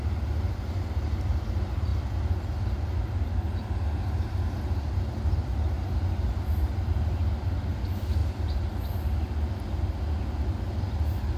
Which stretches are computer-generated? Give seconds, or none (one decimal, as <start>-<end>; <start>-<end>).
none